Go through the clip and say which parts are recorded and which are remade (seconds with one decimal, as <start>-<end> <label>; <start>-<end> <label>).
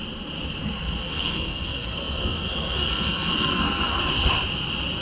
0.0-1.0 recorded; 1.0-4.0 remade; 4.0-5.0 recorded